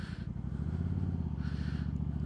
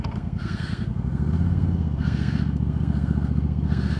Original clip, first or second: first